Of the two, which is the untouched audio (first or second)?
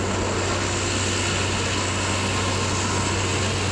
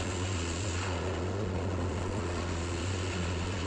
first